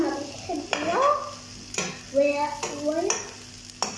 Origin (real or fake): real